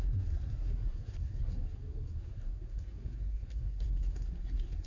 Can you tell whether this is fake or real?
fake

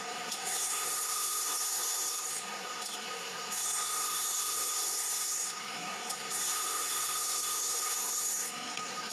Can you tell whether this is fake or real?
fake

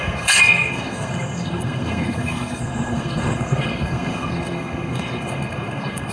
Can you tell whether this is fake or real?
fake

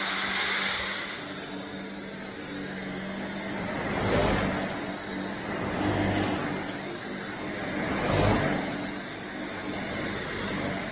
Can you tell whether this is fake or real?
real